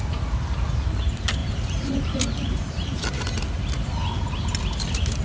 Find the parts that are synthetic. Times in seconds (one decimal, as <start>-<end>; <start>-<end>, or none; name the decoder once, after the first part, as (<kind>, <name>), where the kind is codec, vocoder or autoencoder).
1.4-3.2 (vocoder, BigVGAN v2)